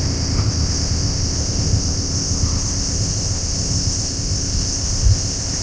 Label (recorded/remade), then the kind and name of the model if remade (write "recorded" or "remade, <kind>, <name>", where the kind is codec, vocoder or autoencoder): remade, codec, ZipCodec